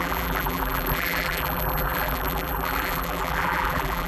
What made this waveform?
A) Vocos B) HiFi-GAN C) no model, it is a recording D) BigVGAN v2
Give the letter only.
D